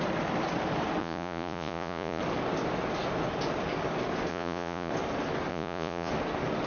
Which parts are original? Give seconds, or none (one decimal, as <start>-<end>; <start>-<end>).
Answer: 0.0-1.0; 2.2-4.3; 4.9-5.5; 6.1-6.7